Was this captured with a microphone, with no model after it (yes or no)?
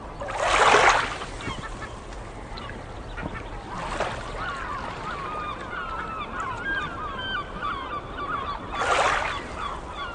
yes